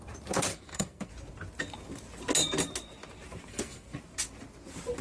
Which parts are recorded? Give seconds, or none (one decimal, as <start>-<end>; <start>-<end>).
0.0-0.5; 1.1-3.5; 4.0-5.0